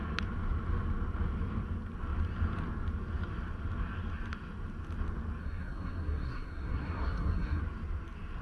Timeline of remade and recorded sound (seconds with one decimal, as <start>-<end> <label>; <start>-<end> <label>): 0.0-5.4 recorded; 5.4-7.6 remade; 7.6-8.4 recorded